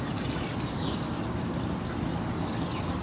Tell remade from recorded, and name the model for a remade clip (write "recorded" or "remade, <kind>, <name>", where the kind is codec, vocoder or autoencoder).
recorded